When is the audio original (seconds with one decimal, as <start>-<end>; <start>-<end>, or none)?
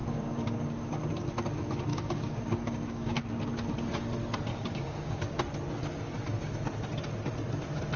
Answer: 1.0-1.9; 3.2-4.5; 5.2-8.0